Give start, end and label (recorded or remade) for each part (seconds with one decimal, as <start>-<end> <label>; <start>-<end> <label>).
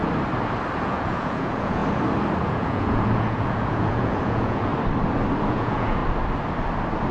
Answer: 0.0-0.8 recorded; 0.8-1.8 remade; 1.8-2.4 recorded; 2.4-4.7 remade; 4.7-5.5 recorded; 5.5-6.0 remade; 6.0-7.1 recorded